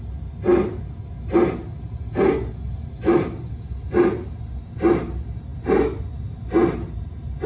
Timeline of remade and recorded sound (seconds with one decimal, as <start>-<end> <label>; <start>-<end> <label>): 0.0-7.5 recorded